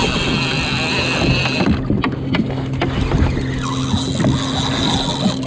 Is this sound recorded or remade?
recorded